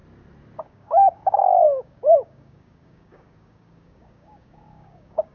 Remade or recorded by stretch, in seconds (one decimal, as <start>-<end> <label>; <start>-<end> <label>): 0.0-0.6 recorded; 0.6-5.3 remade